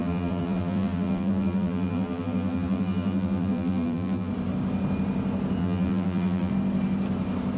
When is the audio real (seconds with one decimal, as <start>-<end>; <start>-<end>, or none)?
4.3-5.6; 6.5-7.6